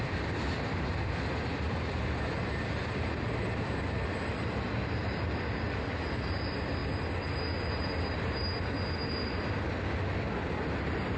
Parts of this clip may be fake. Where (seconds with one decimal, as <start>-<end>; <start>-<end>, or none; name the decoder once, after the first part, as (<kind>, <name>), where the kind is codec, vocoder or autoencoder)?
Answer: none